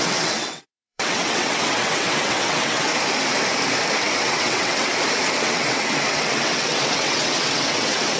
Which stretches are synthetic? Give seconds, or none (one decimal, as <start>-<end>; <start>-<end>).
0.0-2.9; 4.0-4.9; 5.4-8.2